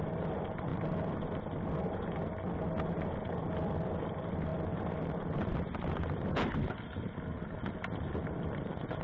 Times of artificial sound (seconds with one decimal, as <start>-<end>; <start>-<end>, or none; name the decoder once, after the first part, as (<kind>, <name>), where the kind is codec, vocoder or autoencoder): none